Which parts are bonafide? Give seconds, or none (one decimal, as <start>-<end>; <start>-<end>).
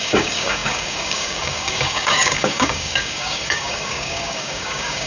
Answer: none